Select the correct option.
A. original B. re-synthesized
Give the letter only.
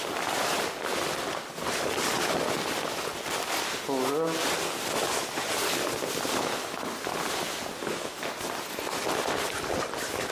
A